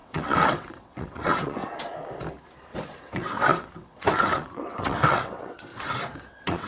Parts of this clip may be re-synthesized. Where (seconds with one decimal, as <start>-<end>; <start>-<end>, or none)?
0.0-1.6; 3.0-5.7; 6.2-6.7